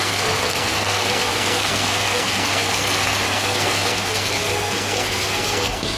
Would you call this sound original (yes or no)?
no